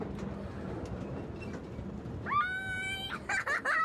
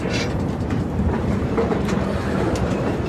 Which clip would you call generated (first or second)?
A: second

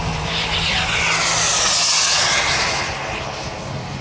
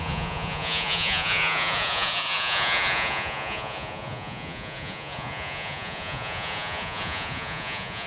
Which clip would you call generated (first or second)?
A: second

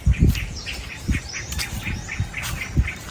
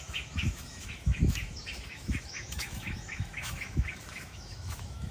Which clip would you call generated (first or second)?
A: second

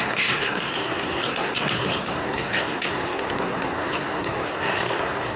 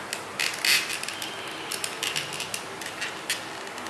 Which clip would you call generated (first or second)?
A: first